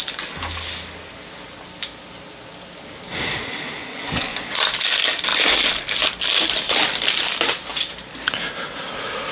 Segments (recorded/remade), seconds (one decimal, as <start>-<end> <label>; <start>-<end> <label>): 0.0-3.8 recorded; 3.8-4.4 remade; 4.4-9.3 recorded